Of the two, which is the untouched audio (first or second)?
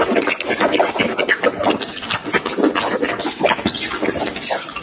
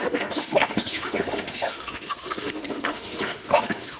first